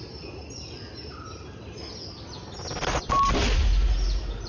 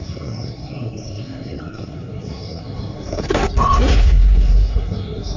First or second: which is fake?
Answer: second